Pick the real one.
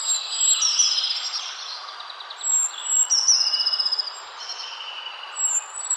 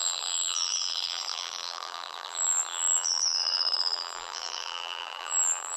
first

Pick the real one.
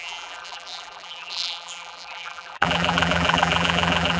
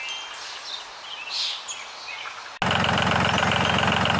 second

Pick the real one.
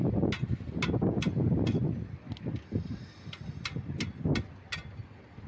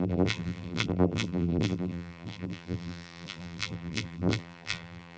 first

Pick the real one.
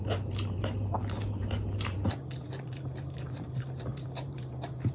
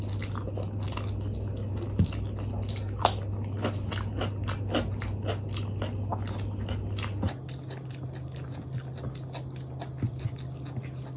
second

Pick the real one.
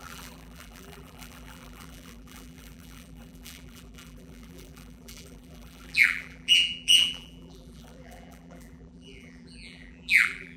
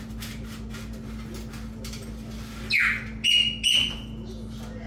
second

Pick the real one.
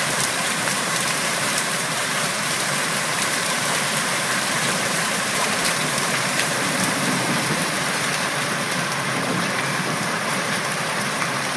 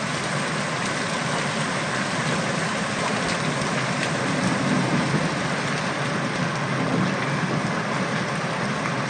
second